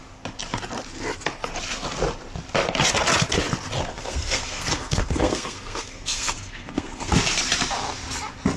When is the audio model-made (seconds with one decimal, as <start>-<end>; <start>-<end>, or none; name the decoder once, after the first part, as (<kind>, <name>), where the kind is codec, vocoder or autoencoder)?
3.9-7.1 (codec, SNAC)